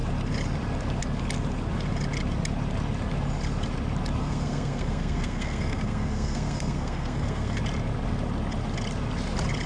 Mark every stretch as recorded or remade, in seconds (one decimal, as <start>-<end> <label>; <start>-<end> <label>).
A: 0.0-4.2 recorded; 4.2-7.6 remade; 7.6-9.7 recorded